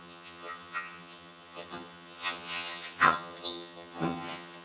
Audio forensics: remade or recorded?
remade